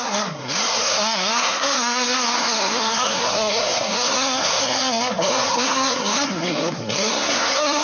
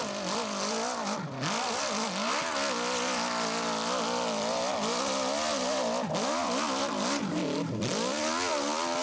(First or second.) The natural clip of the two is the second